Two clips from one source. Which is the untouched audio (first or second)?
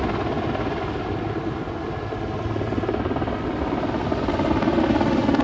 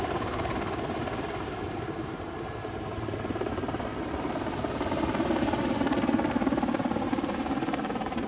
first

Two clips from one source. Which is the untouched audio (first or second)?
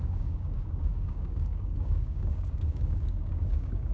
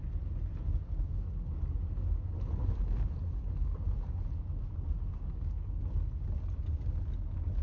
second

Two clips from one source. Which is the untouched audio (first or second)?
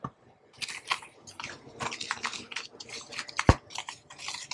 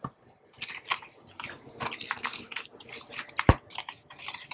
first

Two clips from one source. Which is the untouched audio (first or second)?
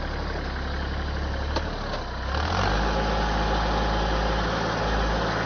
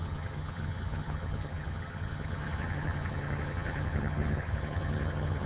first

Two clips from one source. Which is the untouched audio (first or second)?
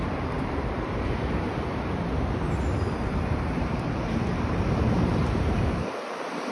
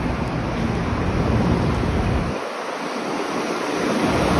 second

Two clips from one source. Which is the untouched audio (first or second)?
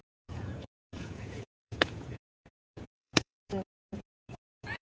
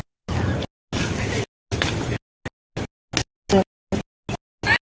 second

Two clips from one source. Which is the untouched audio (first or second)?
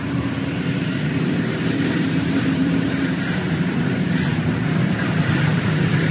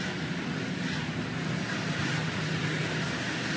second